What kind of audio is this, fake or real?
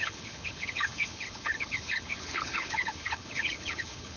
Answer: fake